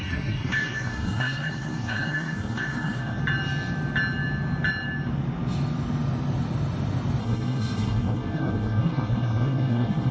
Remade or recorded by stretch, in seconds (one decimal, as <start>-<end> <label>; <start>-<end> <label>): 0.0-3.2 remade; 3.2-7.2 recorded; 7.2-10.1 remade